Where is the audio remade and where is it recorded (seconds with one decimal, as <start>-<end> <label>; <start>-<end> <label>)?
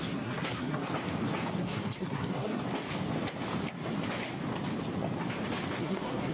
0.0-0.9 remade; 0.9-1.6 recorded; 1.6-2.6 remade; 2.6-5.8 recorded; 5.8-6.3 remade